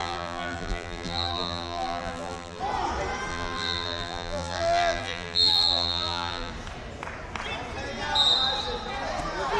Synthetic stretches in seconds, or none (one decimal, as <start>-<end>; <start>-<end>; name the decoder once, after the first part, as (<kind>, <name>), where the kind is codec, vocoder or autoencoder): 0.0-2.6 (vocoder, BigVGAN v2); 3.3-6.5